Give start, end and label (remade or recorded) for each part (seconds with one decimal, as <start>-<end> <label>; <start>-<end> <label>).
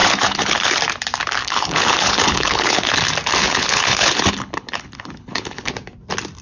0.0-0.8 remade; 0.8-1.4 recorded; 1.4-2.9 remade; 2.9-3.4 recorded; 3.4-5.7 remade; 5.7-6.4 recorded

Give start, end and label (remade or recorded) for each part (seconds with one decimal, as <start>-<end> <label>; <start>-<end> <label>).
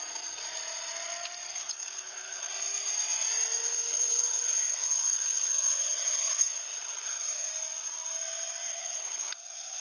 0.0-1.5 recorded; 1.5-2.5 remade; 2.5-3.6 recorded; 3.6-7.5 remade; 7.5-8.7 recorded; 8.7-9.8 remade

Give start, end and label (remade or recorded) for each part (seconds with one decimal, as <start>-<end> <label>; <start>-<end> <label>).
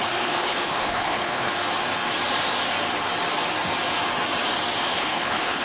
0.0-1.5 remade; 1.5-4.9 recorded; 4.9-5.6 remade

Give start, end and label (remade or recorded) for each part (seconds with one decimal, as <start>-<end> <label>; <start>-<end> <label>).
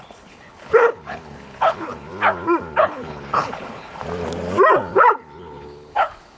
0.0-2.1 remade; 2.1-2.8 recorded; 2.8-4.0 remade; 4.0-4.9 recorded; 4.9-6.4 remade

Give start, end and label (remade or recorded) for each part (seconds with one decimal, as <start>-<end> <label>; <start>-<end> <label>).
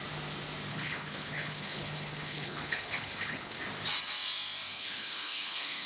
0.0-0.7 recorded; 0.7-3.6 remade; 3.6-4.7 recorded; 4.7-5.9 remade